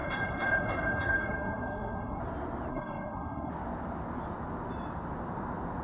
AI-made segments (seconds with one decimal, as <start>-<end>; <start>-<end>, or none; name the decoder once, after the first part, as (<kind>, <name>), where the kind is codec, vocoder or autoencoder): 0.0-2.2 (codec, SNAC); 2.7-3.5